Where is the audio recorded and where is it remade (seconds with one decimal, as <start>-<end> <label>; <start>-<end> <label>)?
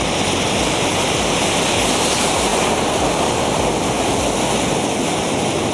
0.0-5.7 recorded